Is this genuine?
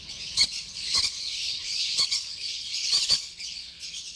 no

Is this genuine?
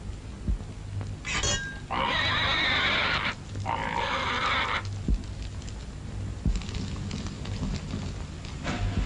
yes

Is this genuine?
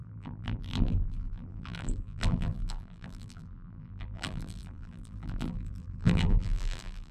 no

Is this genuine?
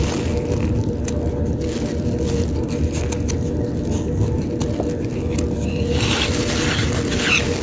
yes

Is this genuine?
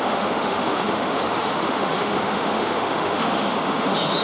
no